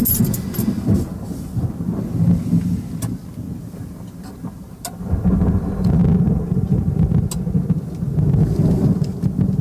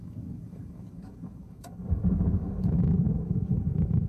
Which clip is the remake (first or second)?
second